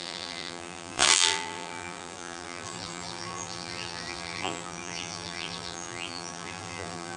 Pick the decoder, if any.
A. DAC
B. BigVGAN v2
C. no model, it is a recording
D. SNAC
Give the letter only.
B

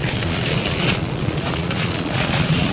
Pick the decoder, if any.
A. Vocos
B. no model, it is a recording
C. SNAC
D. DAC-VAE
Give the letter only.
A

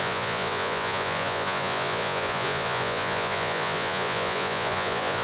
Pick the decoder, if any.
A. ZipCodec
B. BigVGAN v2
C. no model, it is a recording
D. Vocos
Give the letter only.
D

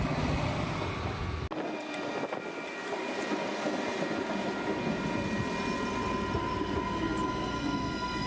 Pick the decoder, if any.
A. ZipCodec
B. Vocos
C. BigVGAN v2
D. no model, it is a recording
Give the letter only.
D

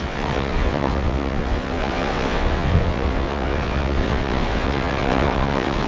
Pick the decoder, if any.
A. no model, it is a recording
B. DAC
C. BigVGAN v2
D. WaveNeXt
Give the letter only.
D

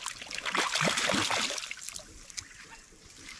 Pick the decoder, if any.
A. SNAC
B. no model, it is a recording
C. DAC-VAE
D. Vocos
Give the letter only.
B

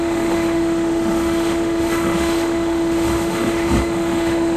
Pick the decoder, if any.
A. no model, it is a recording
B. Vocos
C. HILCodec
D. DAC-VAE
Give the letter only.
D